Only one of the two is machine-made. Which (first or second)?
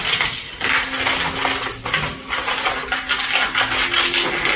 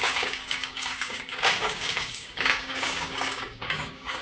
second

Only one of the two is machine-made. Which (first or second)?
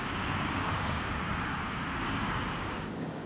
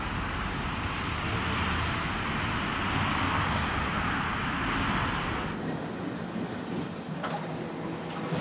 first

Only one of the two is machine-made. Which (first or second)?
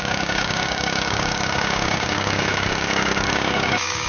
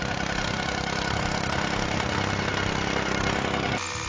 first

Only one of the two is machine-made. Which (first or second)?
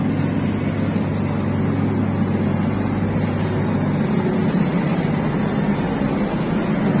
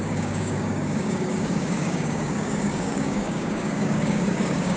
second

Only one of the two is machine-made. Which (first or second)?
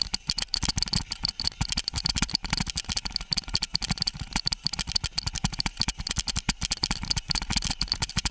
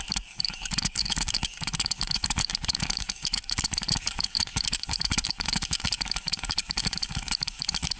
second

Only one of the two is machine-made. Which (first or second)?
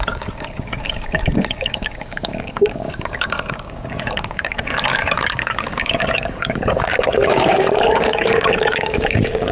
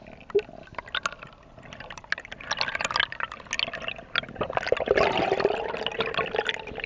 first